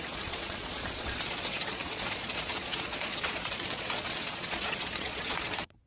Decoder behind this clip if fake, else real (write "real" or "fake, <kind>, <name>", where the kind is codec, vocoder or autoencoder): fake, vocoder, Vocos